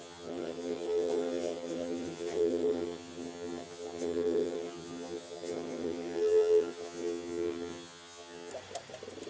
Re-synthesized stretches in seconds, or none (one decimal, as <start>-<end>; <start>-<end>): 0.0-8.5

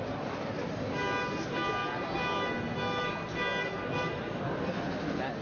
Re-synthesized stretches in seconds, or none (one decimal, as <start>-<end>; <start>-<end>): none

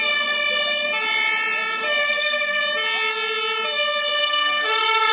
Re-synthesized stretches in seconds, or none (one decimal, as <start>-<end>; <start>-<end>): 2.0-2.6; 4.2-5.1

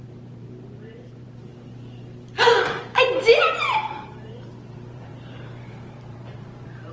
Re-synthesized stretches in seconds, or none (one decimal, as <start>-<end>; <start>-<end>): 0.0-1.5; 2.5-5.1; 5.7-6.9

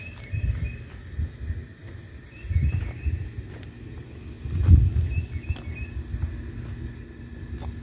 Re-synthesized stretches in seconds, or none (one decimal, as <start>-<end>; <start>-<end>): none

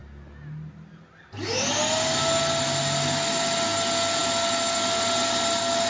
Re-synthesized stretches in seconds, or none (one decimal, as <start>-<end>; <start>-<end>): none

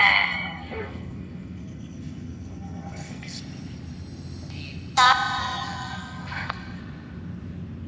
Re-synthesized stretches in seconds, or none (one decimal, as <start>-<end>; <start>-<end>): 0.0-3.4; 5.4-6.8